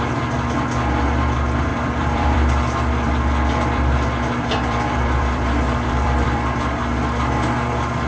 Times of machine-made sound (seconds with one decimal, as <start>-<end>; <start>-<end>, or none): 1.7-6.6